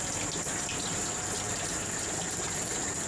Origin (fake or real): real